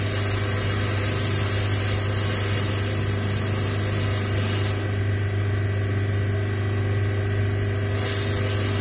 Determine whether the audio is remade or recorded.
recorded